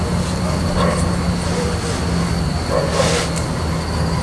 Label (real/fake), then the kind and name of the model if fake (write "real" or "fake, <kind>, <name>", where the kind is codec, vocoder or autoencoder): real